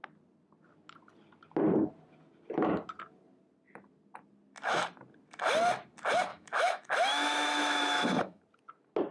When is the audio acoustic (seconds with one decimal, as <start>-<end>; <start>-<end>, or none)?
0.0-6.3; 8.4-9.1